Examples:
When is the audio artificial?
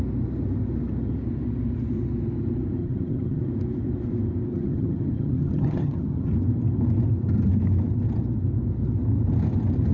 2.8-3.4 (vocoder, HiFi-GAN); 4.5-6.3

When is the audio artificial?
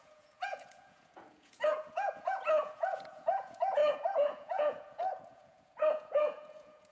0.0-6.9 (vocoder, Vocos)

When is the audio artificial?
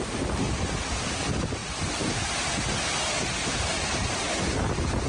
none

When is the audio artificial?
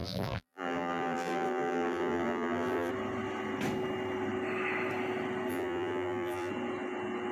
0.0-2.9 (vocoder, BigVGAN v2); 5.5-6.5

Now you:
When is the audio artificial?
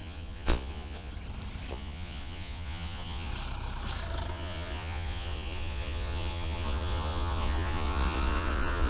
0.0-1.1 (vocoder, Vocos); 1.7-3.3; 4.3-8.9